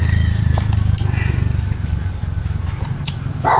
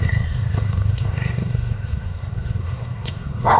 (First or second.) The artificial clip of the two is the second